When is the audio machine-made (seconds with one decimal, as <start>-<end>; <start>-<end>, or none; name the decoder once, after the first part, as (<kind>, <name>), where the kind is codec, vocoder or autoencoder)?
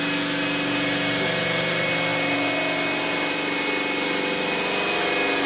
none